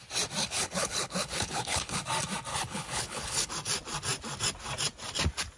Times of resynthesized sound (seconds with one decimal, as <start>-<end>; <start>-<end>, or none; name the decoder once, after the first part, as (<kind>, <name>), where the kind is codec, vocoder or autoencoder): 0.4-2.0 (codec, HILCodec); 2.5-3.5